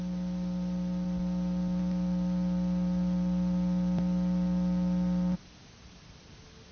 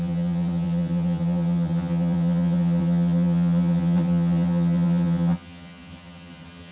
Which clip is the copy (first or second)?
second